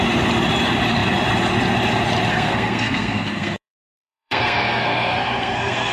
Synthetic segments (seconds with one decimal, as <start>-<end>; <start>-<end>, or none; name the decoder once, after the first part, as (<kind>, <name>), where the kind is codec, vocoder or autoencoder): 2.3-5.9 (codec, SNAC)